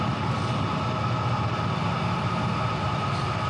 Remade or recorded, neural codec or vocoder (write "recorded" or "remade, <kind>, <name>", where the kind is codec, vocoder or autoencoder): recorded